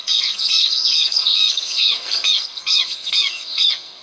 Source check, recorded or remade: remade